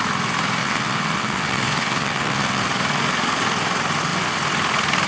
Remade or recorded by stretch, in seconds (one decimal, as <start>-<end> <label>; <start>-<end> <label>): 0.0-0.6 recorded; 0.6-2.6 remade; 2.6-5.1 recorded